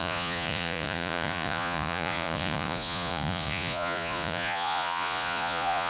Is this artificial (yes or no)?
yes